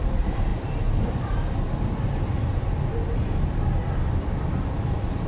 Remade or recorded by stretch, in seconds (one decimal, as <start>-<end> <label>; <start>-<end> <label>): 0.0-3.2 remade; 3.2-4.0 recorded; 4.0-5.3 remade